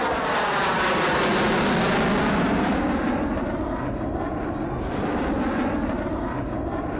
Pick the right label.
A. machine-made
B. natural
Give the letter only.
B